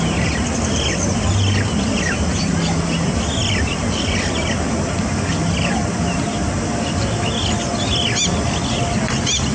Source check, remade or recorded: recorded